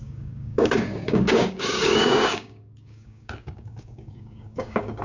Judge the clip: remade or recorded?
remade